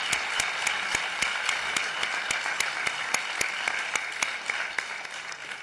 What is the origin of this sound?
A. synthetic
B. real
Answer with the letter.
B